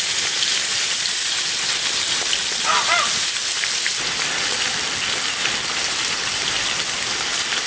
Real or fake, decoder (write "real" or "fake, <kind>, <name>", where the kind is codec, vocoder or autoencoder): real